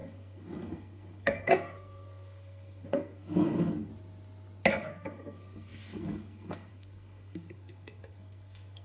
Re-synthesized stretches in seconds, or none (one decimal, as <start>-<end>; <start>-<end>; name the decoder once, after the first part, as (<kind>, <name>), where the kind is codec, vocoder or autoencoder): 0.0-3.9 (codec, SNAC); 4.7-8.8